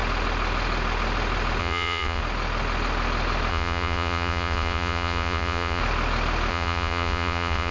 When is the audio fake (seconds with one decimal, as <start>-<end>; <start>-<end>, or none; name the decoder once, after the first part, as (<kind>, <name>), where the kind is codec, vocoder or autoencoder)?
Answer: 1.6-2.2 (vocoder, Vocos); 3.5-5.8; 6.5-7.7

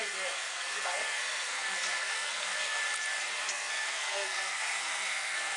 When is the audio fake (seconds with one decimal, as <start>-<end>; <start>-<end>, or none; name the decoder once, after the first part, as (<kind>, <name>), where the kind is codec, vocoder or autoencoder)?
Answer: 0.0-2.8 (codec, SNAC); 3.5-5.6

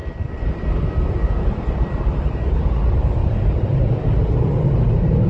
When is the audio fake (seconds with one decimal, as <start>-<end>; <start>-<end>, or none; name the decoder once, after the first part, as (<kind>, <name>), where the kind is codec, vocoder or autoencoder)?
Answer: 3.2-3.7 (vocoder, BigVGAN v2)

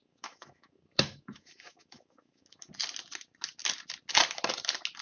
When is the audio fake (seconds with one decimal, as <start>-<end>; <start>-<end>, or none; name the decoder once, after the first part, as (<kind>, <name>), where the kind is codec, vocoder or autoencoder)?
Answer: 0.0-2.7 (autoencoder, DAC-VAE)

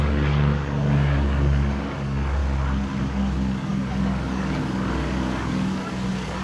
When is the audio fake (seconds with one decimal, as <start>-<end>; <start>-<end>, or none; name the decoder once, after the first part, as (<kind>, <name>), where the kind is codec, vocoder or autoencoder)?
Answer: 0.0-2.4 (codec, DAC); 3.0-6.4

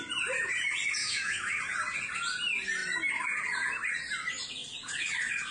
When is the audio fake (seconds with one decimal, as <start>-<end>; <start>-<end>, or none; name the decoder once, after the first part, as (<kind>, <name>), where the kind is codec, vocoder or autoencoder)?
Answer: 1.0-1.6 (autoencoder, DAC-VAE)

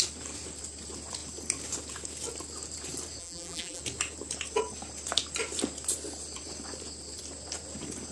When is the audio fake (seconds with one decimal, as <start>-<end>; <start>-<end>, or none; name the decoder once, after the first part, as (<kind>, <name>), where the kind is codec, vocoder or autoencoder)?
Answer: 3.2-3.8 (vocoder, BigVGAN v2)

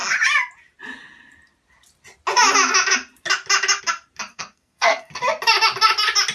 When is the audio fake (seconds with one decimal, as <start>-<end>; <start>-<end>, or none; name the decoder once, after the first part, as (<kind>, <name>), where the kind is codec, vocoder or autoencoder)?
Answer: 4.3-5.2 (codec, SNAC)